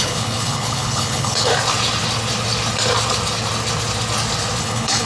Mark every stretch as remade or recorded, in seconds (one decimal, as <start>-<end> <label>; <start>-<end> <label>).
0.0-1.5 remade; 1.5-4.6 recorded; 4.6-5.1 remade

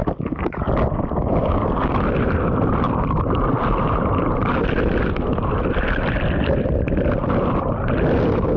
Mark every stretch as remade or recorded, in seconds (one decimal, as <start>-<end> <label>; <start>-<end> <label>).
0.0-8.6 recorded

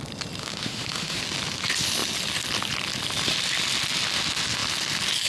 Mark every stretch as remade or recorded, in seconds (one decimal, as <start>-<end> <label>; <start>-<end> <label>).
0.0-0.4 recorded; 0.4-1.2 remade; 1.2-5.3 recorded

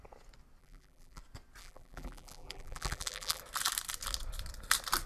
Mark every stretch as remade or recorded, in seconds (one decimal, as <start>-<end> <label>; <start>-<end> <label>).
0.0-0.6 recorded; 0.6-1.2 remade; 1.2-1.6 recorded; 1.6-3.4 remade; 3.4-5.1 recorded